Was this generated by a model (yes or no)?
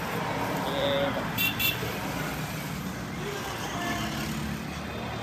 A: no